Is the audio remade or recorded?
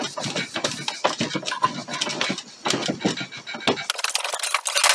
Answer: recorded